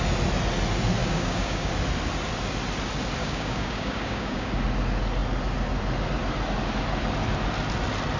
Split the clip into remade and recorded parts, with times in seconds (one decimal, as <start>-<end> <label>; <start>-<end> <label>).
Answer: 0.0-1.0 recorded; 1.0-1.7 remade; 1.7-3.2 recorded; 3.2-4.5 remade; 4.5-8.2 recorded